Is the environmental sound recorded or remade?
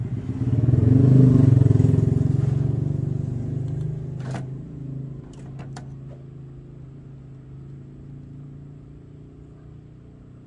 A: recorded